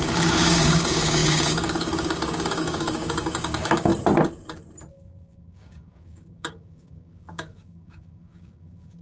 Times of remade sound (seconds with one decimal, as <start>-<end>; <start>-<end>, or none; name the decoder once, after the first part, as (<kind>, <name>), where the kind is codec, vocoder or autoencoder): 0.0-3.9 (codec, DAC); 4.9-9.0